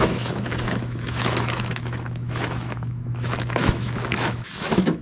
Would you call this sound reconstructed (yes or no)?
yes